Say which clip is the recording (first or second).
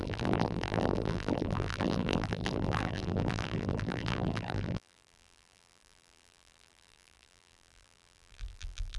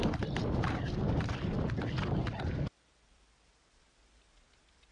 second